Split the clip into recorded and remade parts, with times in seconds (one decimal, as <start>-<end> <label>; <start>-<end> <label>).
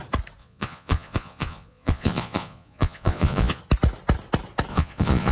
0.0-0.4 recorded; 0.4-3.6 remade; 3.6-4.7 recorded; 4.7-5.3 remade